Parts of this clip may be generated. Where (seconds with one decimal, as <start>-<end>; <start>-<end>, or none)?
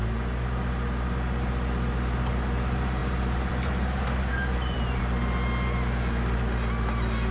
3.0-5.0